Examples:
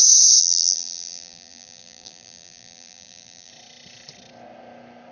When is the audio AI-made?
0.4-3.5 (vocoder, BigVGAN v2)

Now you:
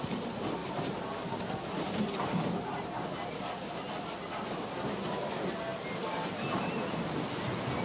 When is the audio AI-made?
0.6-1.3 (vocoder, BigVGAN v2)

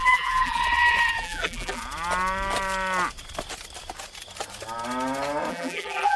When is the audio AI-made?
0.0-0.6 (vocoder, BigVGAN v2); 1.2-1.8; 5.5-6.2